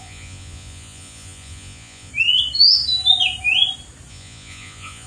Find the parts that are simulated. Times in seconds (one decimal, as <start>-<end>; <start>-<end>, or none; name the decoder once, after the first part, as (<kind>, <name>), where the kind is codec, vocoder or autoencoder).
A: 0.0-2.1 (vocoder, Vocos); 4.1-5.1